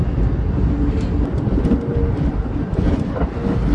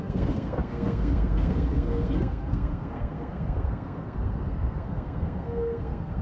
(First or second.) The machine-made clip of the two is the second